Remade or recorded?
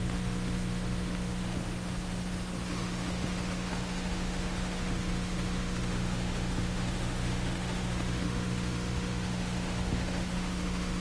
remade